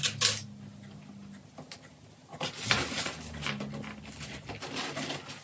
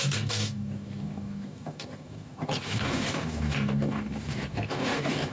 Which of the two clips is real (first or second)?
first